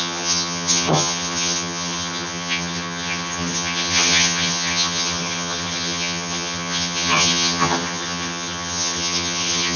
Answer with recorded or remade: remade